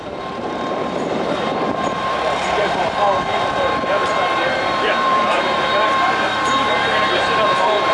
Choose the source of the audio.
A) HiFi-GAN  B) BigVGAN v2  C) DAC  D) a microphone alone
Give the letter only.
B